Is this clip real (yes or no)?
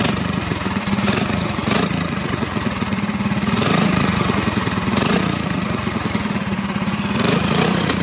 no